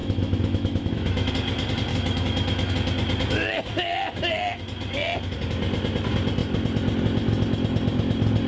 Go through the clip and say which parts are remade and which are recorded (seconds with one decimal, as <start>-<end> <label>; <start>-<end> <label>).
0.0-1.3 remade; 1.3-1.9 recorded; 1.9-2.7 remade; 2.7-8.5 recorded

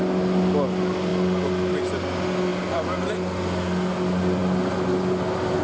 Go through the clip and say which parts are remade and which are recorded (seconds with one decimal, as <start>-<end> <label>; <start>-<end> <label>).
0.0-5.6 recorded

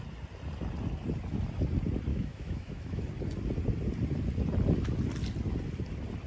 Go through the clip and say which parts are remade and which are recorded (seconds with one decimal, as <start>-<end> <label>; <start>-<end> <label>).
0.0-2.1 recorded; 2.1-3.0 remade; 3.0-6.3 recorded

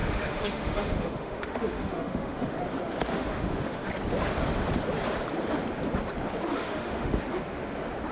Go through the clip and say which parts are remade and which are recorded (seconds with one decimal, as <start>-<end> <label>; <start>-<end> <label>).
0.0-2.6 remade; 2.6-3.1 recorded; 3.1-3.9 remade; 3.9-6.5 recorded; 6.5-7.2 remade; 7.2-8.1 recorded

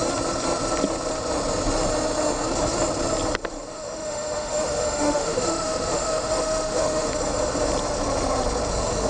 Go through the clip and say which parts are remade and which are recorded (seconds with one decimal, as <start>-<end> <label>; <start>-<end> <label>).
0.0-3.7 recorded; 3.7-7.1 remade; 7.1-9.1 recorded

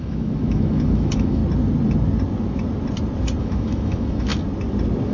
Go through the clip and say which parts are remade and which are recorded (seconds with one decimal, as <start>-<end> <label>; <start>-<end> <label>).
0.0-1.4 remade; 1.4-3.4 recorded; 3.4-4.3 remade; 4.3-5.1 recorded

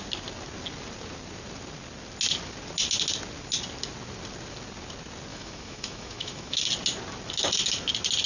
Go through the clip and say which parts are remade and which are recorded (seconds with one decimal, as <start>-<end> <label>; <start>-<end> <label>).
0.0-5.3 recorded; 5.3-6.6 remade; 6.6-8.3 recorded

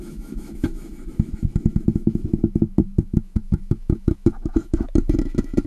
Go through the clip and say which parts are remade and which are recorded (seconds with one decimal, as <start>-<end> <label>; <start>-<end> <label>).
0.0-5.7 remade